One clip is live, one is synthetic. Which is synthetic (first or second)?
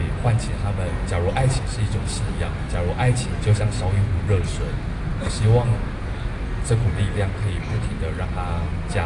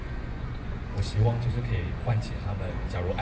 second